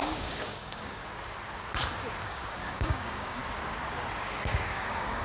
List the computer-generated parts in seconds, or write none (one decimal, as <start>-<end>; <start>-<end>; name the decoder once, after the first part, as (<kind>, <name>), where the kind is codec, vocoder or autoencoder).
0.0-1.0 (codec, DAC); 2.2-3.4; 4.3-5.2